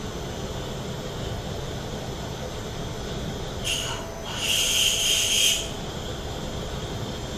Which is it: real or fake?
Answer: real